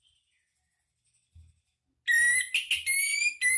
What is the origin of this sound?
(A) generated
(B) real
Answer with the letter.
B